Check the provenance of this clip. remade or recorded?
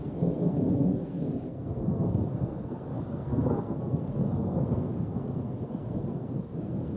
remade